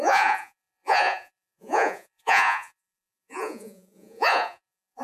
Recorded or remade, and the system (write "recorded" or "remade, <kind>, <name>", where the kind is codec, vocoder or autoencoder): remade, vocoder, Vocos